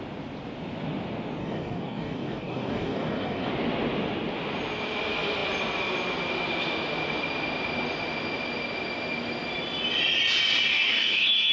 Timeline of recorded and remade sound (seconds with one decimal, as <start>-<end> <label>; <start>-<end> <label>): 0.0-1.4 recorded; 1.4-3.5 remade; 3.5-10.7 recorded; 10.7-11.5 remade

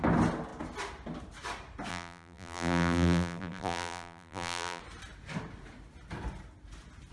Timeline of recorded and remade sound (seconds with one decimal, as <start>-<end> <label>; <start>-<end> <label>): 0.0-1.9 recorded; 1.9-4.8 remade; 4.8-7.1 recorded